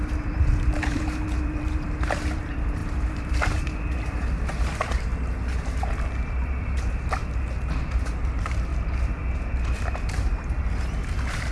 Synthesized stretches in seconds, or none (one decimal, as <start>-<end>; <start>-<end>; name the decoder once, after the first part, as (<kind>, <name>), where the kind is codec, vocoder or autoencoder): 0.0-5.1 (vocoder, BigVGAN v2); 6.3-7.2; 7.9-8.7; 9.8-11.5